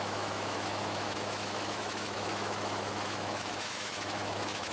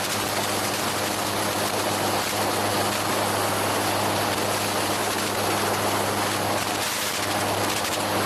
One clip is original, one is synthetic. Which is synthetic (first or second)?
first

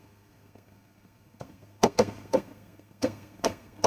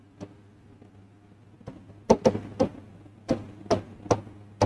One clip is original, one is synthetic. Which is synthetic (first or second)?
first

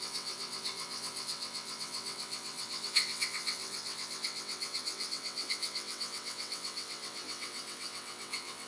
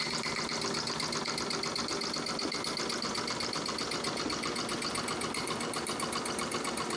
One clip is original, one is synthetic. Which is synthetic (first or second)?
first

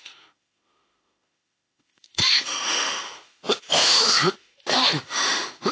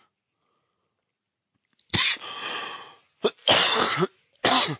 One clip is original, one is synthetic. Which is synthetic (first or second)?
first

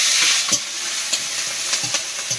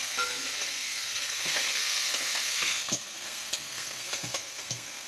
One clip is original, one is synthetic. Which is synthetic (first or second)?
second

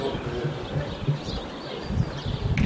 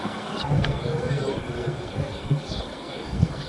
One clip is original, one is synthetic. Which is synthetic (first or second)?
second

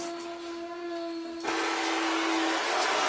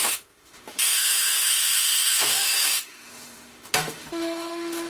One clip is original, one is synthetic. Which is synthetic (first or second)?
second